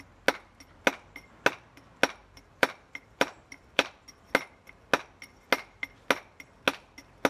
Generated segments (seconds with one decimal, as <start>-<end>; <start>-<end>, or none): 2.2-4.0

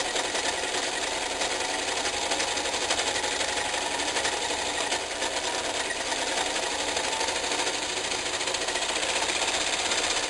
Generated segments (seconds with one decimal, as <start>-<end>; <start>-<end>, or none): none

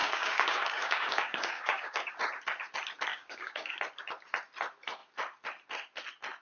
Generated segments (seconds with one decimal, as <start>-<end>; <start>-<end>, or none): 0.0-2.1; 3.1-3.8

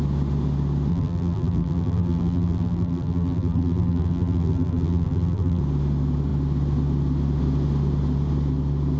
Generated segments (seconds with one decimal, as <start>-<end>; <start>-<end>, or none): 0.9-5.6

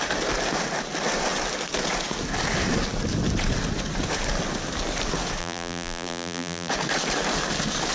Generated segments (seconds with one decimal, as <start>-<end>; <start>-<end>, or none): 5.4-6.7

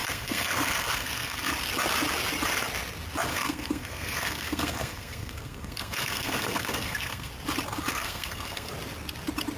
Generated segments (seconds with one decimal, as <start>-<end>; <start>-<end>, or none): 0.0-1.5; 3.3-7.3; 7.9-8.7